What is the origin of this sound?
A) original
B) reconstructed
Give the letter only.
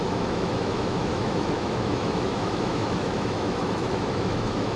B